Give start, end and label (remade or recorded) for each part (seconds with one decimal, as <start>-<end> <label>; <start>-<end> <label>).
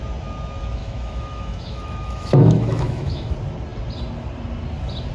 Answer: 0.0-0.8 recorded; 0.8-3.3 remade; 3.3-5.1 recorded